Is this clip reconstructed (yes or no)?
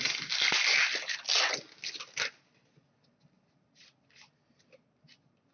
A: no